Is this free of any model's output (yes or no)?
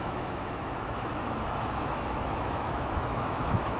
no